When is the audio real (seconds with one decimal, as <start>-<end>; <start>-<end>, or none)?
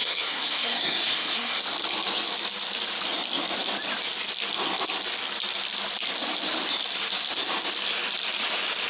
1.6-8.9